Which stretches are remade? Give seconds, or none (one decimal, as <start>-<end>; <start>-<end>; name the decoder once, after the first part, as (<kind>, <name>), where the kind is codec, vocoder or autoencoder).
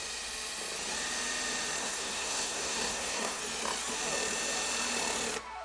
1.8-3.4 (codec, SNAC)